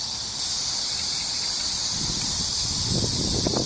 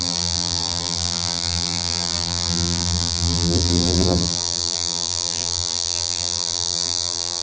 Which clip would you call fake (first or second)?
second